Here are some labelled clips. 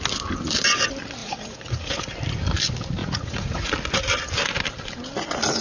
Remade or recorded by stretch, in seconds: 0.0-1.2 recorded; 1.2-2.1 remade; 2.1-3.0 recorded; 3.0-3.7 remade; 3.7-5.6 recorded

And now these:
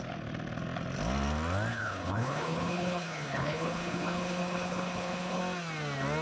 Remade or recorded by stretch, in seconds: 0.0-1.7 recorded; 1.7-5.4 remade; 5.4-6.2 recorded

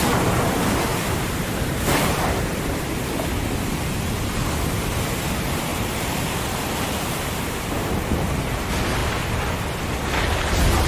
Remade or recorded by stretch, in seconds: 0.0-0.9 recorded; 0.9-2.4 remade; 2.4-5.7 recorded; 5.7-8.3 remade; 8.3-10.9 recorded

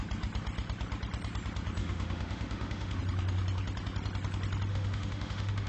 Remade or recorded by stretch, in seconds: 0.0-1.8 recorded; 1.8-3.0 remade; 3.0-4.7 recorded; 4.7-5.7 remade

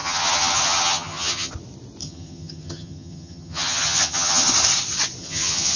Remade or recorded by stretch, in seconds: 0.0-1.5 remade; 1.5-2.0 recorded; 2.0-4.5 remade; 4.5-5.2 recorded; 5.2-5.8 remade

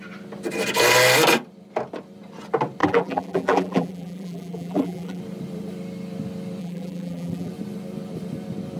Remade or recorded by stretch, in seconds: 0.0-2.8 recorded; 2.8-5.2 remade; 5.2-6.6 recorded; 6.6-7.5 remade; 7.5-8.8 recorded

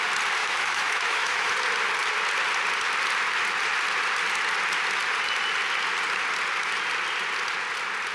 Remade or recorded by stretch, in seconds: 0.0-0.4 recorded; 0.4-1.5 remade; 1.5-8.1 recorded

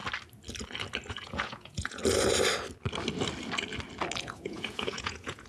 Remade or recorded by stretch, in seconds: 0.0-1.1 recorded; 1.1-2.0 remade; 2.0-4.2 recorded; 4.2-5.5 remade